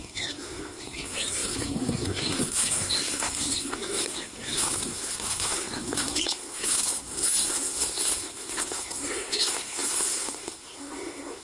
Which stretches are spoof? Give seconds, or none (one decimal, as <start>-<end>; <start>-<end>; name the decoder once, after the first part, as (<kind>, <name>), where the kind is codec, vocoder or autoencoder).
0.0-11.4 (codec, SNAC)